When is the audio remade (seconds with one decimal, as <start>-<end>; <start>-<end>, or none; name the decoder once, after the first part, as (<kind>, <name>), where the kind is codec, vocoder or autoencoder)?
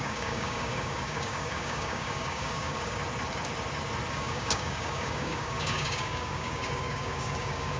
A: 0.0-3.0 (codec, DAC); 4.1-7.8